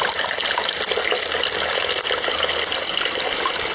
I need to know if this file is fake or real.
real